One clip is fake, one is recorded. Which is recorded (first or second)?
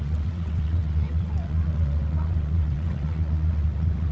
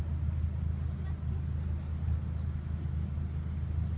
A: second